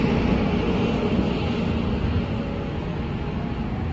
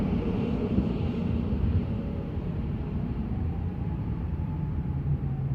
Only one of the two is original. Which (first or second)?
first